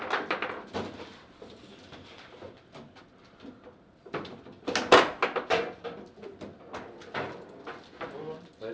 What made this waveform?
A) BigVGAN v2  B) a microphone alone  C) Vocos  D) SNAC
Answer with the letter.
B